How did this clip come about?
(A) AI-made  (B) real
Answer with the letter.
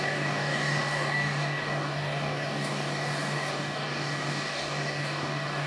A